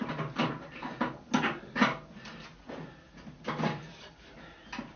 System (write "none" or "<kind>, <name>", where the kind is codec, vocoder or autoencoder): none